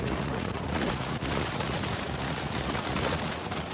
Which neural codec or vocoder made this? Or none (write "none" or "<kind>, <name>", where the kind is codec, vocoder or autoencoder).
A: vocoder, Vocos